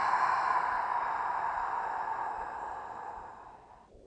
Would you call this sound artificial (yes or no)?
no